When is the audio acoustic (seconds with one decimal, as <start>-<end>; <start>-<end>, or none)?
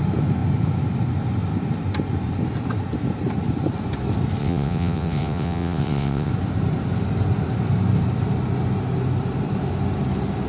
0.0-4.4; 6.3-10.5